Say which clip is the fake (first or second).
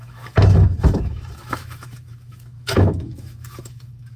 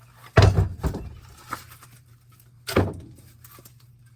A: first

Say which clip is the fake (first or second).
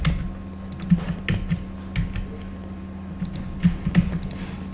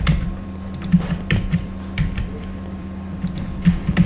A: second